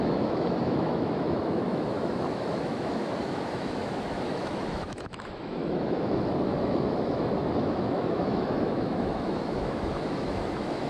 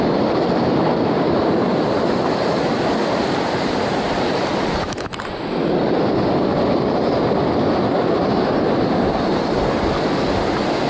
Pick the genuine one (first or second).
second